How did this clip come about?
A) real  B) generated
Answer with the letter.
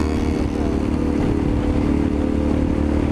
A